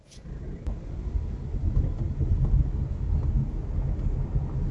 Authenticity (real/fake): real